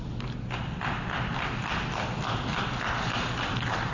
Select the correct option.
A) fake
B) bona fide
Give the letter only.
B